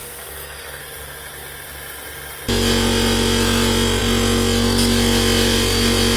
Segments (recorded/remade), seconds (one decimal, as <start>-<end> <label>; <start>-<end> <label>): 0.0-0.8 remade; 0.8-6.2 recorded